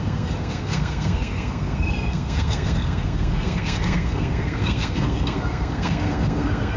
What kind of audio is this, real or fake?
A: fake